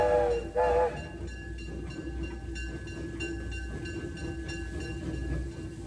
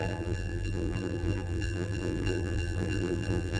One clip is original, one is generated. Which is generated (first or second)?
second